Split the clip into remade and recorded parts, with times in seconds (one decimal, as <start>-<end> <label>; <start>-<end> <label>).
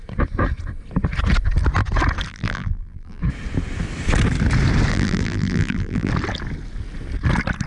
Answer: 0.0-2.3 recorded; 2.3-3.2 remade; 3.2-4.9 recorded; 4.9-6.1 remade; 6.1-7.7 recorded